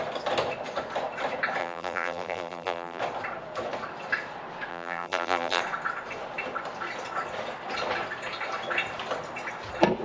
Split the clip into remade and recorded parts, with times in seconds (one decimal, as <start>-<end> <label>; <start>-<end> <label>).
0.0-1.6 recorded; 1.6-3.0 remade; 3.0-4.7 recorded; 4.7-5.6 remade; 5.6-10.0 recorded